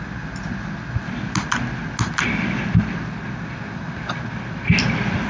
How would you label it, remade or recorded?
recorded